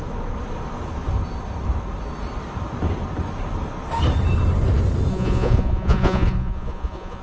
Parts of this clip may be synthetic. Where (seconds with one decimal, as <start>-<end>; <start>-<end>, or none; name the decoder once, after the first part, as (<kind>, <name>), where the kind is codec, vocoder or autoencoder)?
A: 5.1-7.2 (vocoder, Vocos)